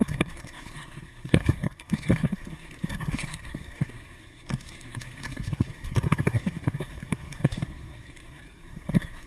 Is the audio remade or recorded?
remade